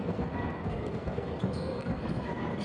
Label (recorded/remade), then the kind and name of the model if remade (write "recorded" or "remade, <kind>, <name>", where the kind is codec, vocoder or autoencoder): remade, codec, SNAC